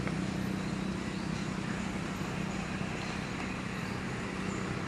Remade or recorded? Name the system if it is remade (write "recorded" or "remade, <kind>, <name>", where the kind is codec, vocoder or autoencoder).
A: recorded